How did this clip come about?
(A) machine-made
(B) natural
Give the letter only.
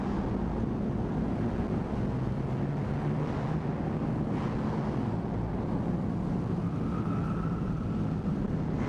B